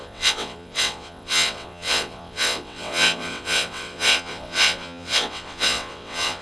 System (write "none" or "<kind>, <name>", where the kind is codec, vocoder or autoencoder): vocoder, WaveNeXt